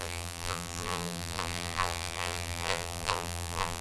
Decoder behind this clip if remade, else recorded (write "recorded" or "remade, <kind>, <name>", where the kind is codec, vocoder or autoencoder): remade, vocoder, BigVGAN v2